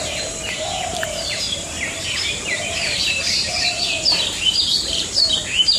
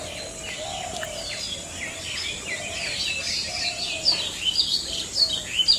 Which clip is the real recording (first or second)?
second